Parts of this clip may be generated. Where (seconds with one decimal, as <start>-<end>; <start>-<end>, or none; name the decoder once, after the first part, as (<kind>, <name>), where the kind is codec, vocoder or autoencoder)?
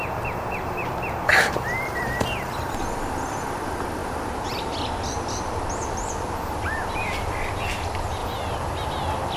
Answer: 0.0-9.4 (vocoder, BigVGAN v2)